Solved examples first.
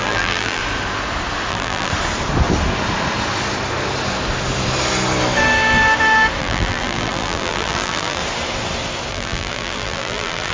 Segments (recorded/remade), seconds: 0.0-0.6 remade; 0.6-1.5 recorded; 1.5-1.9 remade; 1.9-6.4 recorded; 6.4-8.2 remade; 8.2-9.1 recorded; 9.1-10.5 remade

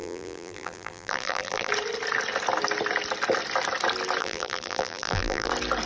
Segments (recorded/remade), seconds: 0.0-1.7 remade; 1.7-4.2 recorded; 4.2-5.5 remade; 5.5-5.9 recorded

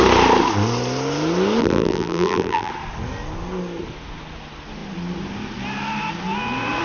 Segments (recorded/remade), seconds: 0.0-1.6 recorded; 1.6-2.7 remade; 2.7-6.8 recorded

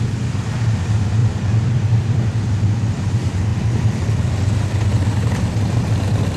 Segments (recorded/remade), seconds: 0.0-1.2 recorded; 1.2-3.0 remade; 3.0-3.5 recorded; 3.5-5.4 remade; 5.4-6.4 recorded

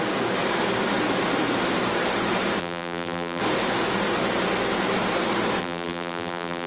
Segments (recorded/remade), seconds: 0.0-2.6 recorded; 2.6-3.4 remade; 3.4-5.6 recorded; 5.6-6.7 remade

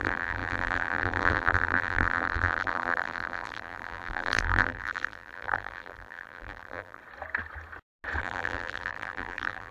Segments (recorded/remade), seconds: 0.0-7.0 remade; 7.0-8.2 recorded; 8.2-9.7 remade

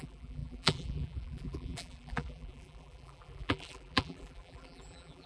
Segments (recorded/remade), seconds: 0.0-5.3 remade